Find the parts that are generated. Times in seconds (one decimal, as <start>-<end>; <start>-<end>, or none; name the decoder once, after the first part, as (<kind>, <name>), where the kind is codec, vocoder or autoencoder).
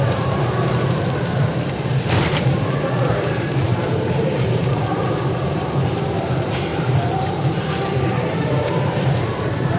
0.0-9.8 (vocoder, BigVGAN v2)